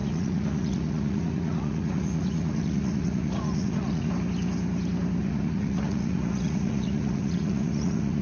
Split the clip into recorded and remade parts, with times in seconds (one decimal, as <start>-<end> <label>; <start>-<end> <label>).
0.0-4.1 remade; 4.1-5.2 recorded; 5.2-8.2 remade

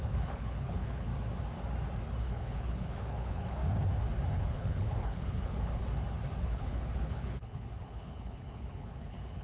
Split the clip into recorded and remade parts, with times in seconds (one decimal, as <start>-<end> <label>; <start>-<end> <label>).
0.0-1.1 remade; 1.1-2.2 recorded; 2.2-3.6 remade; 3.6-4.4 recorded; 4.4-5.8 remade; 5.8-6.4 recorded; 6.4-9.4 remade

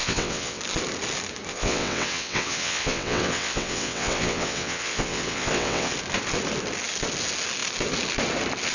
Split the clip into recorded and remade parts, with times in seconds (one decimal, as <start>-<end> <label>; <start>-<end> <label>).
0.0-0.6 remade; 0.6-1.5 recorded; 1.5-5.9 remade; 5.9-8.7 recorded

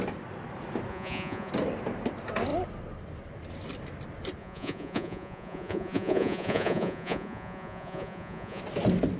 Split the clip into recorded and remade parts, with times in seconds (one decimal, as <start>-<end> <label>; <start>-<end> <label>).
0.0-0.9 recorded; 0.9-1.5 remade; 1.5-4.4 recorded; 4.4-8.6 remade; 8.6-9.2 recorded